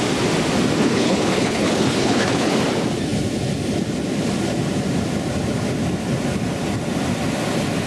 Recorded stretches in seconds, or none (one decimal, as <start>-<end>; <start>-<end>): 0.0-0.8; 2.5-7.9

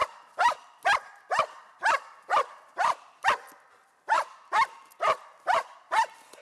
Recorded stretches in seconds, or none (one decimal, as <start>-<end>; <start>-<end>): 0.0-6.4

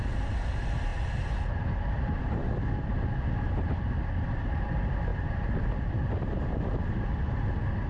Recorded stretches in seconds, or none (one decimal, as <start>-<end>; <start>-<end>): 0.0-7.9

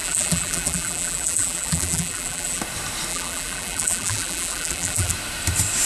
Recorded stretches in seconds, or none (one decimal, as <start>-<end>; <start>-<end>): 2.6-3.1; 5.1-5.9

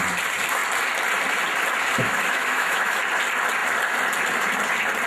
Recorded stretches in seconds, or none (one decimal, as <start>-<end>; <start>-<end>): 0.0-2.0; 3.0-5.1

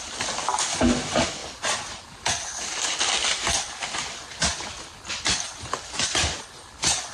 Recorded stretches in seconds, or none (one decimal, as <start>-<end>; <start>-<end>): 0.0-7.1

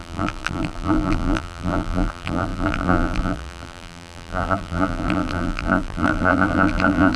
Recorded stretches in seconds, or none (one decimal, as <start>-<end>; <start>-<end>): none

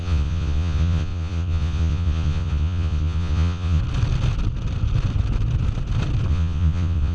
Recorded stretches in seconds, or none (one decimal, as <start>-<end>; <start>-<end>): 3.8-6.3